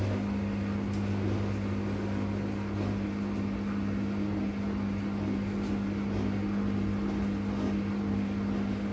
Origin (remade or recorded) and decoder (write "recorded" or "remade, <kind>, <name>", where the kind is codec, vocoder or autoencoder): recorded